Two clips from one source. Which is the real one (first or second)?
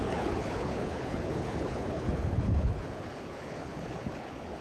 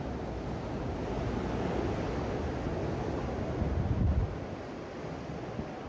second